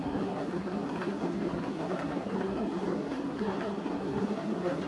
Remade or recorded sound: remade